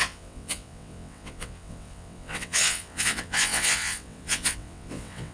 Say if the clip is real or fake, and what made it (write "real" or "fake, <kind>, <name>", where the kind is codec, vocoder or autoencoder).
fake, vocoder, WaveNeXt